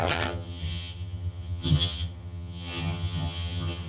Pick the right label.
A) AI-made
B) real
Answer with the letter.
A